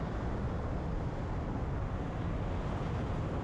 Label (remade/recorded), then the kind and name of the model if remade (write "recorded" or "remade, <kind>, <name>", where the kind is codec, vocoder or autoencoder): recorded